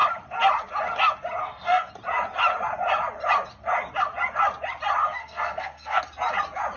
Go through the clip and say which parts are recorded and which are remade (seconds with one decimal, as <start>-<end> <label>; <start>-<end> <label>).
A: 0.0-1.4 recorded; 1.4-1.9 remade; 1.9-5.0 recorded; 5.0-6.0 remade; 6.0-6.8 recorded